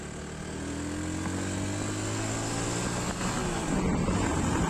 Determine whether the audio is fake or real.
real